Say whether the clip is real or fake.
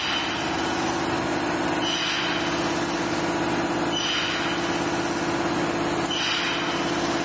real